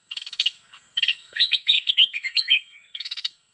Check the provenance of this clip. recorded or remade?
remade